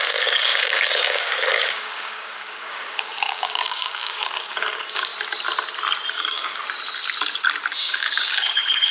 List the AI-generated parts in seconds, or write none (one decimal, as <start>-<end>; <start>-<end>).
0.0-5.1; 6.1-6.6; 7.8-8.9